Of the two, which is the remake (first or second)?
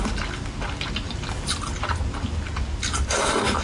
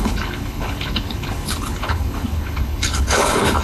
second